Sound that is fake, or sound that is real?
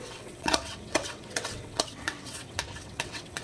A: fake